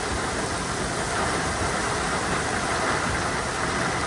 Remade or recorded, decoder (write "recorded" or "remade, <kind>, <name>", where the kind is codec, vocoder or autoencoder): recorded